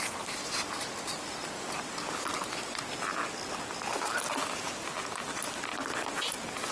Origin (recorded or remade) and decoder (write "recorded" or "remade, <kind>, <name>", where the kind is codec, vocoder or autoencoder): recorded